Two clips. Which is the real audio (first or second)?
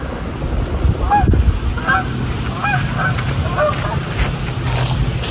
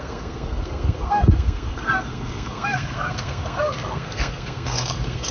first